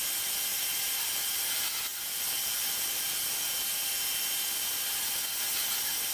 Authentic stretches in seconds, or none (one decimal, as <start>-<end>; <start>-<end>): 0.0-0.5; 1.1-6.1